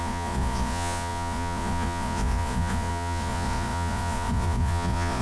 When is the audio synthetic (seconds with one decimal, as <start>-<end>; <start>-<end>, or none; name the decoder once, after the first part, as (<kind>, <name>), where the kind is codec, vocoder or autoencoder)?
0.0-5.2 (vocoder, Vocos)